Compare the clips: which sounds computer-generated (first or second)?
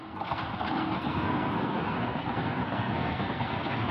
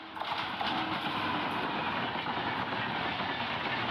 first